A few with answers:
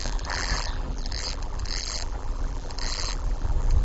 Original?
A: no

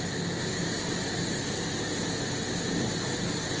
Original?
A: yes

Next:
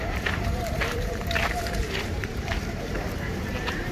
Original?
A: no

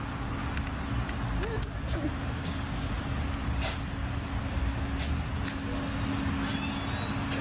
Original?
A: yes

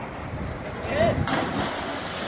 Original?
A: yes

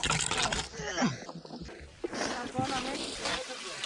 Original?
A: yes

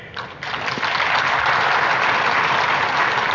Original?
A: yes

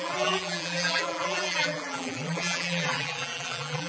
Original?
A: no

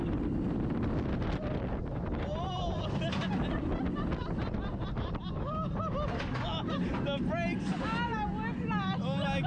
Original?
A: yes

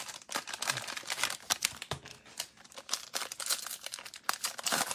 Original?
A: yes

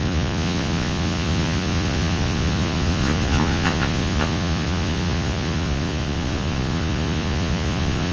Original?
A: no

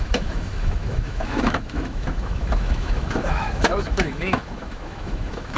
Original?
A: no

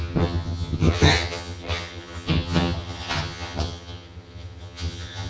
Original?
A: no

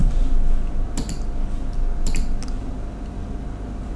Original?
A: yes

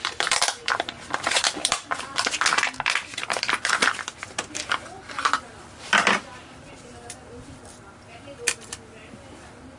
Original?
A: no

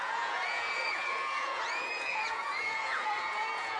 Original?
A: no